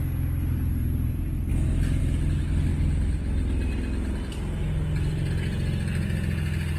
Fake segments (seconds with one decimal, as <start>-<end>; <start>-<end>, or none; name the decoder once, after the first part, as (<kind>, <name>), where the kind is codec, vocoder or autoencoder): none